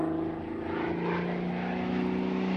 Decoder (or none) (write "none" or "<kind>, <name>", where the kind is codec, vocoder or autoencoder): none